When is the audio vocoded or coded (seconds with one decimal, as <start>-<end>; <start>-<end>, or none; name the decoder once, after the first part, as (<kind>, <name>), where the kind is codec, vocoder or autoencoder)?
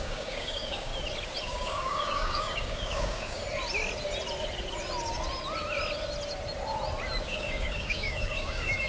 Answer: 0.0-0.9 (codec, DAC); 1.4-3.4; 7.2-8.9